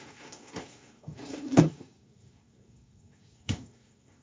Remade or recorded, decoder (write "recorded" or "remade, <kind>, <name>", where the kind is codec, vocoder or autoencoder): remade, codec, SNAC